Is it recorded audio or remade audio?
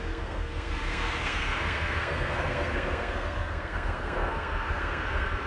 remade